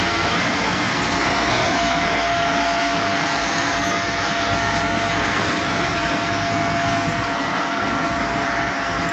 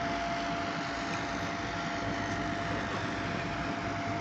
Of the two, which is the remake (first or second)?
first